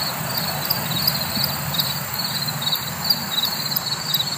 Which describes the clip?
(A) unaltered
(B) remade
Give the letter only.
B